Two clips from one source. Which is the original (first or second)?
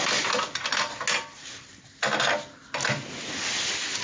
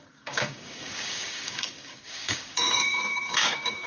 first